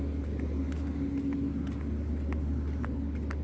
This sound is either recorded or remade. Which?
recorded